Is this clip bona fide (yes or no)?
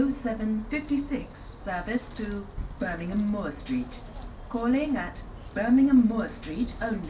yes